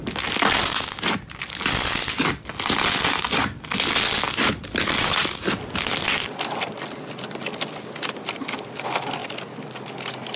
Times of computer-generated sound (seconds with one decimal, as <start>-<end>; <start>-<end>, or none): none